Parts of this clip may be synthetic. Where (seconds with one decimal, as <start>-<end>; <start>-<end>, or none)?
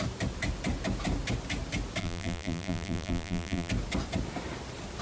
2.0-3.7